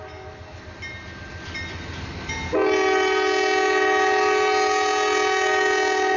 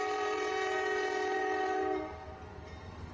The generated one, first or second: second